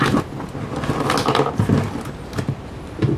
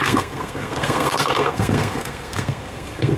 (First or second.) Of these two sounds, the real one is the first